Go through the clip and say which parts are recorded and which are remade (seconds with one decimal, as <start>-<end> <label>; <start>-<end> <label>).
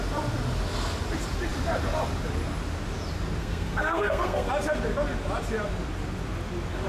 0.0-3.4 recorded; 3.4-4.5 remade; 4.5-6.9 recorded